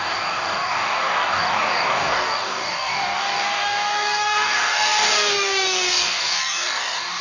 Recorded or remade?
remade